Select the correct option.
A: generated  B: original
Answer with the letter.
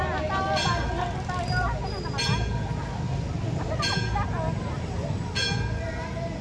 B